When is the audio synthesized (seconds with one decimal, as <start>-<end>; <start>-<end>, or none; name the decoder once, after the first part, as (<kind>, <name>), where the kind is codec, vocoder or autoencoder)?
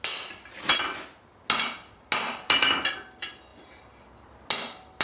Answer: none